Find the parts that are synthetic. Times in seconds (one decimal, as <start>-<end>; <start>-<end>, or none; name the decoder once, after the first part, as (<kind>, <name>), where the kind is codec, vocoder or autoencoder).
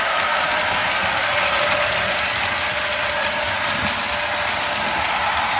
none